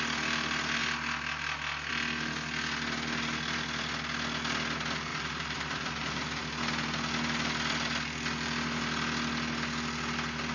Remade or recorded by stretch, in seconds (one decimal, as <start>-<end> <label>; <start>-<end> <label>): 0.0-5.1 recorded; 5.1-6.4 remade; 6.4-10.5 recorded